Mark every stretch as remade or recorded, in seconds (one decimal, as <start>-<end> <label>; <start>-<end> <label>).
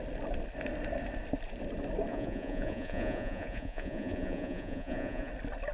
0.0-2.1 recorded; 2.1-5.3 remade; 5.3-5.7 recorded